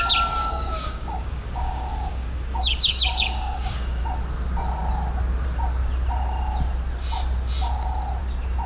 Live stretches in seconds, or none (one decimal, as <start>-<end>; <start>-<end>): 0.0-0.4; 4.0-8.7